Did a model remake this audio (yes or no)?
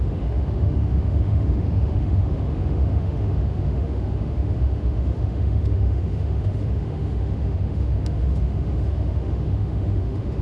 yes